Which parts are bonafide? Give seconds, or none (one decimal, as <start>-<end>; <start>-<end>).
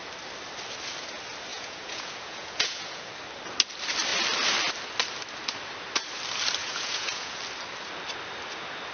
0.0-1.5; 3.1-6.6; 7.4-8.9